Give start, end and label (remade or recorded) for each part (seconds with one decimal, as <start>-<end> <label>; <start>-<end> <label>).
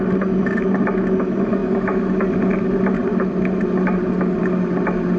0.0-5.2 recorded